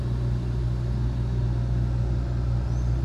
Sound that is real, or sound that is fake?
real